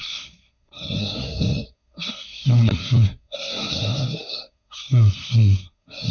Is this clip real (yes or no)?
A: no